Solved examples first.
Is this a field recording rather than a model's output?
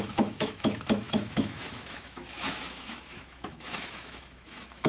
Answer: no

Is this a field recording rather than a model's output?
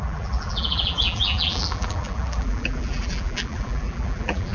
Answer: no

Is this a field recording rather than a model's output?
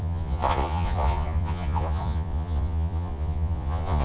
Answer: no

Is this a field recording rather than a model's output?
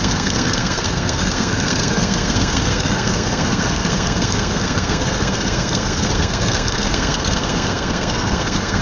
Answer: no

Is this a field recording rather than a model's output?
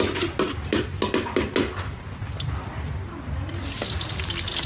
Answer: yes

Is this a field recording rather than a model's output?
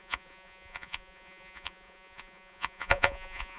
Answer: no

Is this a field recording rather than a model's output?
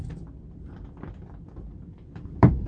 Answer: no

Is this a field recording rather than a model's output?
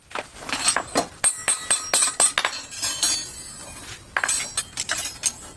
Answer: yes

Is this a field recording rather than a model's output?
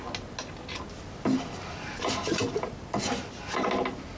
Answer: yes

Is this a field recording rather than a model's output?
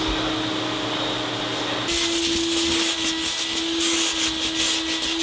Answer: yes